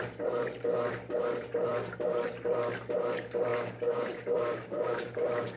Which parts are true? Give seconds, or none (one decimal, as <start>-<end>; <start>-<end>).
0.0-3.5